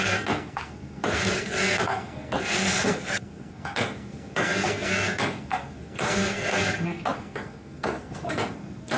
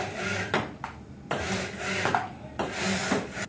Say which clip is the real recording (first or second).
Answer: second